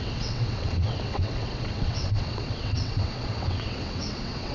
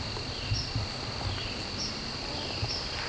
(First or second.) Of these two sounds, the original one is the second